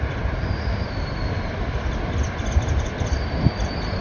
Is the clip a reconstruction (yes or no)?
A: yes